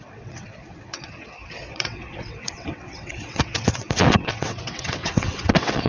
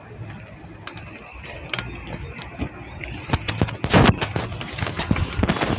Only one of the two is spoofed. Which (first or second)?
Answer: first